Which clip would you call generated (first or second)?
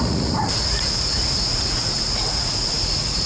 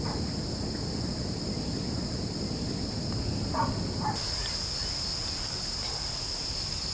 first